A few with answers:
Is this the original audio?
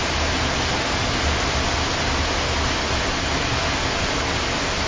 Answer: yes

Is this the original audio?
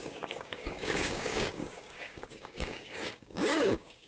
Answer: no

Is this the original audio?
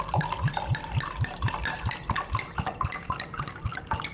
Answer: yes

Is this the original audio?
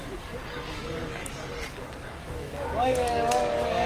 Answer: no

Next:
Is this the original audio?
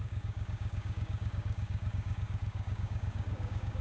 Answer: no